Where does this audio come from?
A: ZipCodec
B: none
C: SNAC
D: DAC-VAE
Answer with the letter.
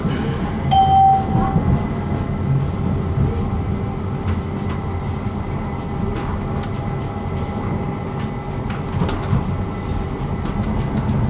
B